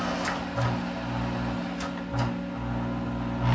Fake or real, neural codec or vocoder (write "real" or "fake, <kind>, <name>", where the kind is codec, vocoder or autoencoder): real